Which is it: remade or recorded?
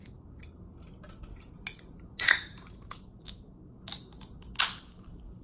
recorded